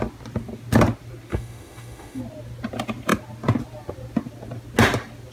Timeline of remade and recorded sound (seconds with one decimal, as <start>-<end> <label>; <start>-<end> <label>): 0.0-1.3 recorded; 1.3-2.2 remade; 2.2-5.3 recorded